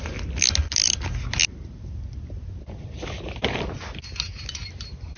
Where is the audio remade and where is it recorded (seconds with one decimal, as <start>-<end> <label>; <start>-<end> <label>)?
0.0-5.2 recorded